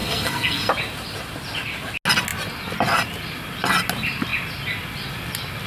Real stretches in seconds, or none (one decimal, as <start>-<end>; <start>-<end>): 0.7-5.7